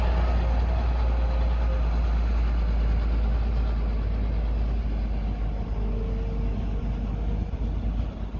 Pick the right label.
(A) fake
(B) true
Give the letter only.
B